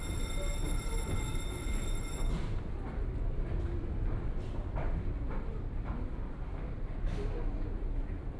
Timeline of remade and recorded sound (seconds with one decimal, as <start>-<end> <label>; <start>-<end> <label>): 0.0-8.4 recorded